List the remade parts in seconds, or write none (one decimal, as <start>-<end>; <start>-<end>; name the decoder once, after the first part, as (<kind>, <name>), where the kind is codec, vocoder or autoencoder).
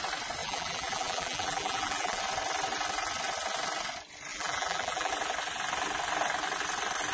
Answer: 0.4-2.2 (vocoder, BigVGAN v2); 4.3-5.1